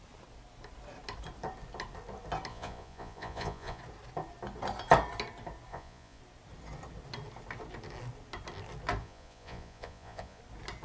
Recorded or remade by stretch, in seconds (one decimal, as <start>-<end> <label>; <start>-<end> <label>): 0.0-2.5 recorded; 2.5-3.8 remade; 3.8-5.7 recorded; 5.7-6.2 remade; 6.2-9.0 recorded; 9.0-10.4 remade; 10.4-10.8 recorded